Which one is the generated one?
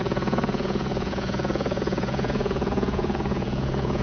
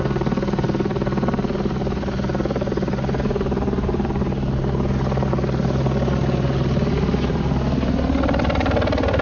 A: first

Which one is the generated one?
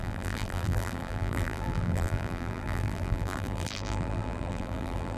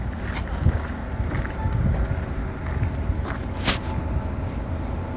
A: first